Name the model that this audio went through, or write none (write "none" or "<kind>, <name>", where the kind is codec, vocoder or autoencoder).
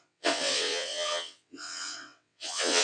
vocoder, WaveNeXt